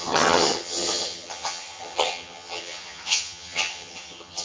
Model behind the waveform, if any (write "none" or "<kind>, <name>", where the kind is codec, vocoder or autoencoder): vocoder, HiFi-GAN